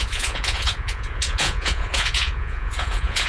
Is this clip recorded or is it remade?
remade